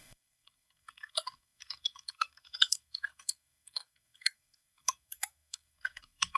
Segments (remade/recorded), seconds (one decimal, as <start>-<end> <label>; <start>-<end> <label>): 0.0-6.4 remade